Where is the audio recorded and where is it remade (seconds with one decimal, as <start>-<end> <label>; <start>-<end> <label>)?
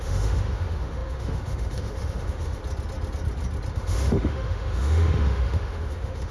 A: 0.0-2.6 remade; 2.6-3.7 recorded; 3.7-6.3 remade